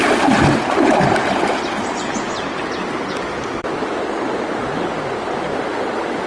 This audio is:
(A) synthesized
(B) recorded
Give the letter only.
B